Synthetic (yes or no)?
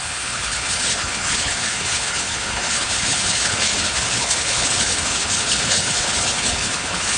yes